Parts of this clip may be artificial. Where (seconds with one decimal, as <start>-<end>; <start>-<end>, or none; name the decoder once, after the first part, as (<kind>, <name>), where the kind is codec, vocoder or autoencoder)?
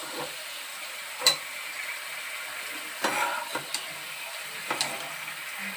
0.0-2.1 (vocoder, BigVGAN v2)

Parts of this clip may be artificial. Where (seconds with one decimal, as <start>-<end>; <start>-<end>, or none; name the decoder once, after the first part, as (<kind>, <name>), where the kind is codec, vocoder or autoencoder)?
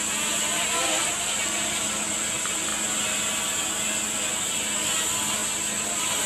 none